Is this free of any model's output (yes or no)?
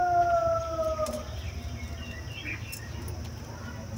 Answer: yes